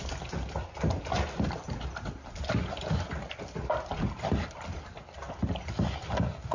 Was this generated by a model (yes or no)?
no